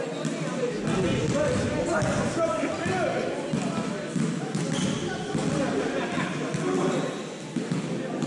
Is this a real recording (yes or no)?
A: yes